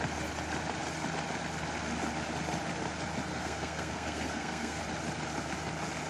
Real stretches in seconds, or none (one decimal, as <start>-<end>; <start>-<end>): 0.0-3.3; 4.8-6.1